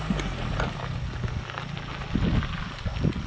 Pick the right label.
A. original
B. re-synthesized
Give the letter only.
A